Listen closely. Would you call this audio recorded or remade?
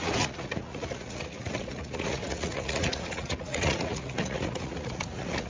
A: remade